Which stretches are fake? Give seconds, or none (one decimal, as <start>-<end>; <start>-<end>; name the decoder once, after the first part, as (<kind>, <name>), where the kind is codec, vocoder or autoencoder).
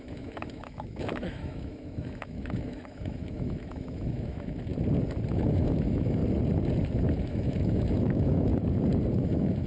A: 0.0-4.7 (autoencoder, DAC-VAE); 5.3-6.2; 7.1-8.5; 9.1-9.7